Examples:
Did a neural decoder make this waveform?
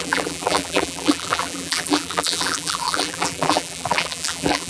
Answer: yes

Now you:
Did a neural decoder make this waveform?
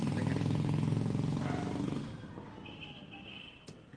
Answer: no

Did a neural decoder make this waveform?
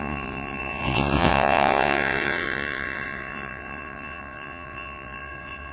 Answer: yes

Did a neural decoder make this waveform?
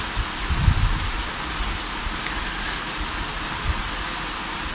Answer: no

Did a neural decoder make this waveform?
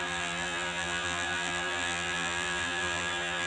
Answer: yes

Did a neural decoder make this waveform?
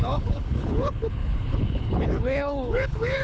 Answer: yes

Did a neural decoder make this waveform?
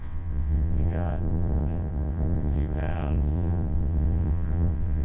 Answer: yes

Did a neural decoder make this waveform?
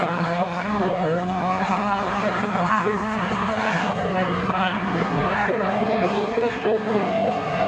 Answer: yes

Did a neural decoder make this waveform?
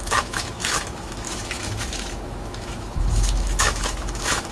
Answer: yes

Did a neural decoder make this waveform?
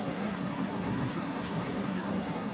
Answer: yes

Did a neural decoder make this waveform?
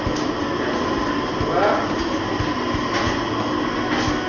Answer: no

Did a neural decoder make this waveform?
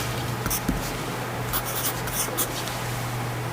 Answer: no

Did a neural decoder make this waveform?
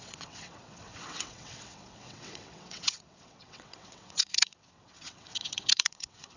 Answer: yes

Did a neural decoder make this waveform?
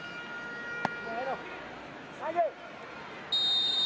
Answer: no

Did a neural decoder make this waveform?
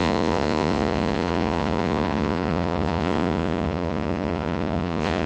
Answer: yes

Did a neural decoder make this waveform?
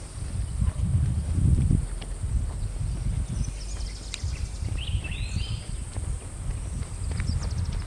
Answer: no